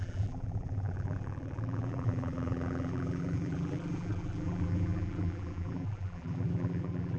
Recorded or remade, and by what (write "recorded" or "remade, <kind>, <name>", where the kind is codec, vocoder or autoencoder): remade, vocoder, BigVGAN v2